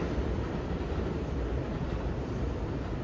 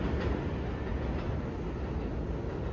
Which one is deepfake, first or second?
first